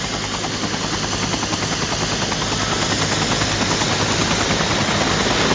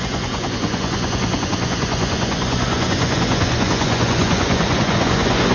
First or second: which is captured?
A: first